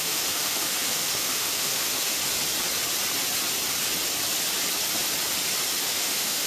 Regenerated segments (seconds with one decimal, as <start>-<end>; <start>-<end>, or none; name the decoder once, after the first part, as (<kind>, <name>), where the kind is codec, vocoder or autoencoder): 0.0-2.2 (autoencoder, DAC-VAE); 5.8-6.5